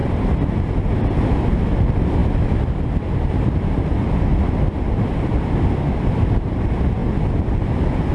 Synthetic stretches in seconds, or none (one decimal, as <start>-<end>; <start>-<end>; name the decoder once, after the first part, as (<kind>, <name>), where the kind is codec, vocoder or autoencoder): 0.5-4.3 (vocoder, BigVGAN v2); 5.0-7.0